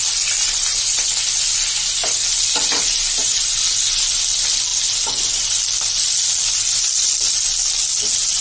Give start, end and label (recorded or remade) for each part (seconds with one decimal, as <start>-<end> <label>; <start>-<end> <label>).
0.0-8.4 recorded